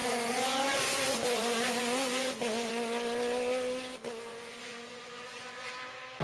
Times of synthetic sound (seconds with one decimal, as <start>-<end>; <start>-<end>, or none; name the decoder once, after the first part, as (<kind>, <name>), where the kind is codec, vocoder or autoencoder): 0.0-2.7 (vocoder, Vocos); 4.3-5.7